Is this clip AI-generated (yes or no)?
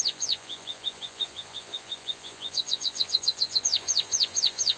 yes